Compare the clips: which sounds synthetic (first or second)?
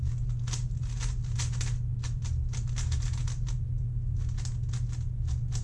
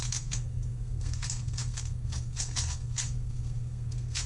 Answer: second